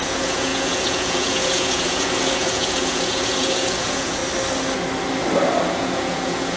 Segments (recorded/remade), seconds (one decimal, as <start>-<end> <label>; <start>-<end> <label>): 0.0-4.2 remade; 4.2-5.7 recorded; 5.7-6.6 remade

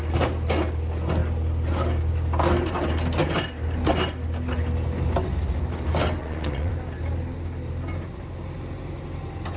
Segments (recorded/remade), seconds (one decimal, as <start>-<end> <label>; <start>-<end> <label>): 0.0-6.2 recorded; 6.2-6.7 remade; 6.7-9.6 recorded

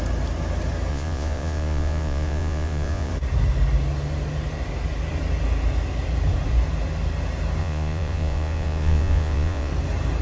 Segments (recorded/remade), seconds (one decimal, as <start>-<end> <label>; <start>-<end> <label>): 0.0-0.9 recorded; 0.9-3.1 remade; 3.1-7.6 recorded; 7.6-9.7 remade; 9.7-10.2 recorded

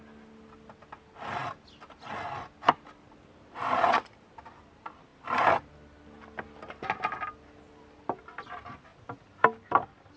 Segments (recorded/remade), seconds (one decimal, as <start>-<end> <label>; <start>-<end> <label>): 0.0-10.2 recorded

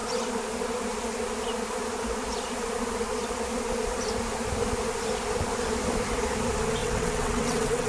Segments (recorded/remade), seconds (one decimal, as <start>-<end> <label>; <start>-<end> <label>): 0.0-6.8 recorded; 6.8-7.9 remade

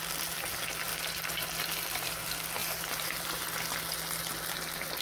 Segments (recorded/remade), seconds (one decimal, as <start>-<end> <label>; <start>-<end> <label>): 0.0-5.0 recorded

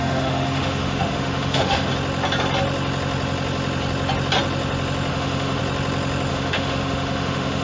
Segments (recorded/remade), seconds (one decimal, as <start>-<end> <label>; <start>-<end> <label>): 0.0-1.9 remade; 1.9-5.1 recorded; 5.1-5.6 remade; 5.6-6.3 recorded; 6.3-7.6 remade